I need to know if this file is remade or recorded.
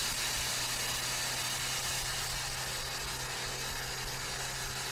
recorded